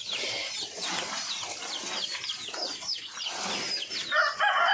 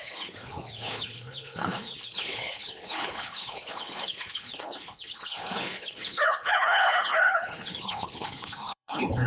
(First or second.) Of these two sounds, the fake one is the second